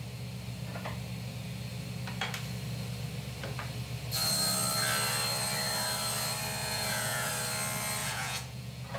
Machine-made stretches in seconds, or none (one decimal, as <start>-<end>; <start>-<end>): 6.6-7.3; 8.0-9.0

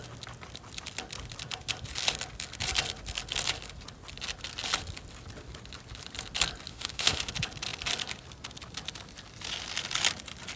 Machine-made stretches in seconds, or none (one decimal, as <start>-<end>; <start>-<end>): 6.7-7.3

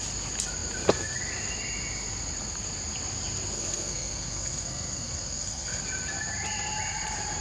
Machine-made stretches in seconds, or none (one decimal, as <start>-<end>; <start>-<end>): 3.6-5.8

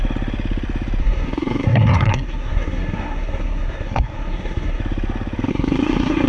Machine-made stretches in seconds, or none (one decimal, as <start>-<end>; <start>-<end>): 1.0-4.8; 5.5-6.3

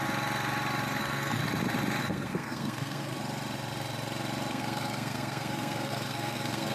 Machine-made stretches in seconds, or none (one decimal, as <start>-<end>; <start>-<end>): 1.0-1.4; 2.0-3.1; 4.5-6.7

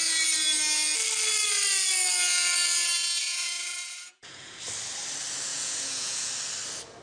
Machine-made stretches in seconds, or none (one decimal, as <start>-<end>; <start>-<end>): 3.2-4.6; 5.5-6.3

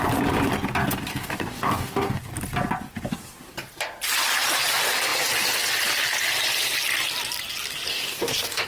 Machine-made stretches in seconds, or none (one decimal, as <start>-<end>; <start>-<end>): 1.1-2.3; 7.9-8.7

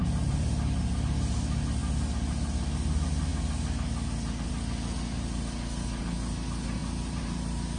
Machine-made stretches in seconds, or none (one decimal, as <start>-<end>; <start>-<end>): 0.0-0.5; 6.8-7.8